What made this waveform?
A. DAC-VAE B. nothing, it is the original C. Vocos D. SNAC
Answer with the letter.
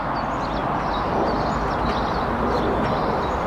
B